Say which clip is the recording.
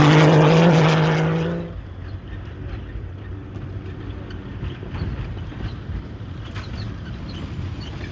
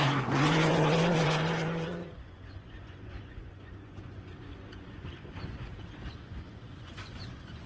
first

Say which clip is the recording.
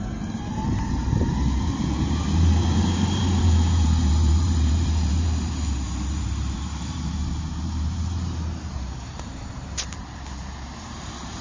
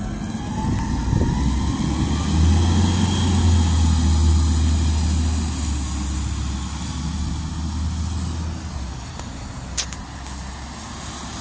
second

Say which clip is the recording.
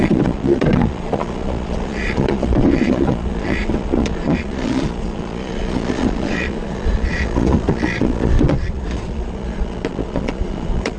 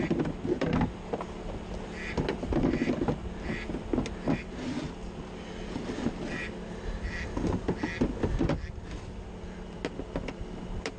second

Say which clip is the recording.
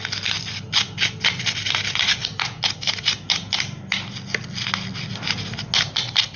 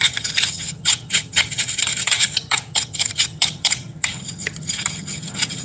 first